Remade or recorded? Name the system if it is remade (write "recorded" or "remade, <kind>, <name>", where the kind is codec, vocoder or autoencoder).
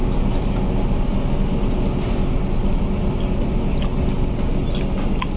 recorded